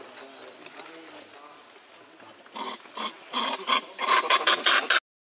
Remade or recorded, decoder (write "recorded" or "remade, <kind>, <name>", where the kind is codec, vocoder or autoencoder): recorded